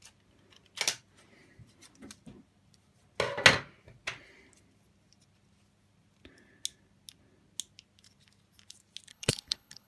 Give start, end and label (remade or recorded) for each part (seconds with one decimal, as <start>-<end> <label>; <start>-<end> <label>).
0.0-9.1 recorded; 9.1-9.9 remade

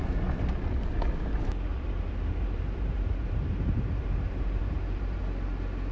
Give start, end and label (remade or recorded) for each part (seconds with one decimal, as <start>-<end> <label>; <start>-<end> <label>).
0.0-1.7 recorded; 1.7-5.2 remade; 5.2-5.9 recorded

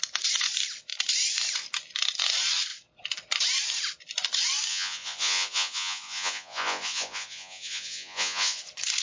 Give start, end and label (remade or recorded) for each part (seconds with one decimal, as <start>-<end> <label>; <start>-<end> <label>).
0.0-4.7 recorded; 4.7-8.6 remade; 8.6-9.0 recorded